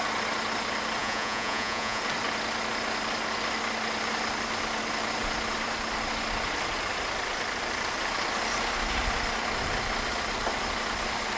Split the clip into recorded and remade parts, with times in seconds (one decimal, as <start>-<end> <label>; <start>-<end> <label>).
0.0-1.0 recorded; 1.0-2.0 remade; 2.0-11.4 recorded